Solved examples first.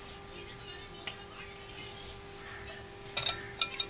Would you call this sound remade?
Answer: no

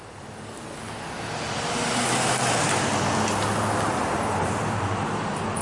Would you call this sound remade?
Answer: no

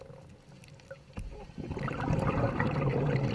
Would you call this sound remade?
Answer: no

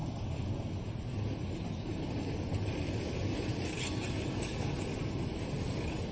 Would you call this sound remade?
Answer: no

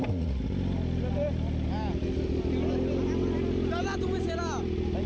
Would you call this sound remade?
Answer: no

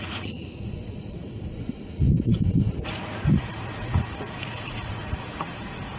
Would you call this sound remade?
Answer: yes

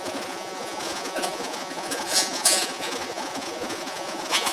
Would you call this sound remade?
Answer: yes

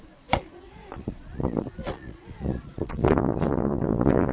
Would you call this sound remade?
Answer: yes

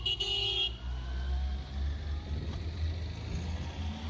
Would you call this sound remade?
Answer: no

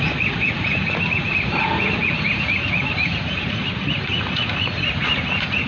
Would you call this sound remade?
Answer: yes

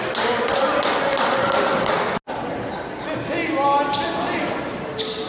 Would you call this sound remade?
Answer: no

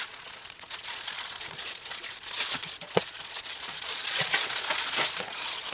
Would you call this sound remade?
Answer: yes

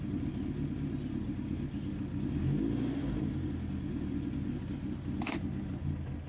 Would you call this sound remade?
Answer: no